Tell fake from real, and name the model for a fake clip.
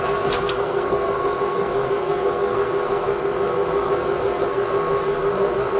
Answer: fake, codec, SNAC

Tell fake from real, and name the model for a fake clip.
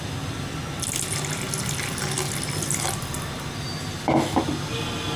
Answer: real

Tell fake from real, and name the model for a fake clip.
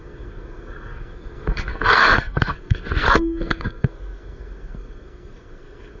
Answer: fake, codec, SNAC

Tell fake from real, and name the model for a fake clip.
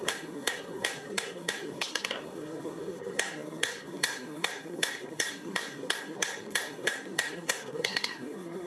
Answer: fake, codec, SNAC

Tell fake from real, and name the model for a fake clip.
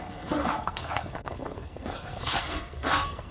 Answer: fake, codec, SNAC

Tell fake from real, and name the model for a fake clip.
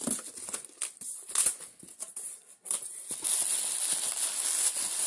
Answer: real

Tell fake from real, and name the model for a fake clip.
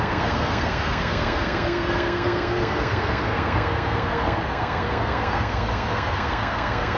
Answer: fake, codec, SNAC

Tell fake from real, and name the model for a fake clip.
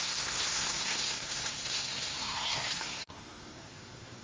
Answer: fake, codec, SNAC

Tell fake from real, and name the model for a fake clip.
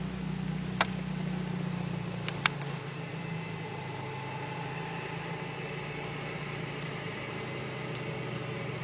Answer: real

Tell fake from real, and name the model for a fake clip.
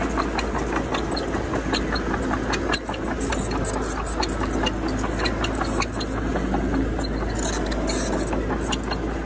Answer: real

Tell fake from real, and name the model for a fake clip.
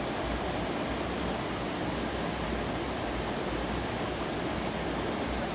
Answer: real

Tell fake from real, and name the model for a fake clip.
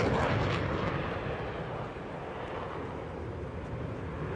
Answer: real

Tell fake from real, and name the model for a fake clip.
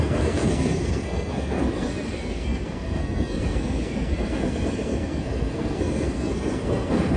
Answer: fake, codec, SNAC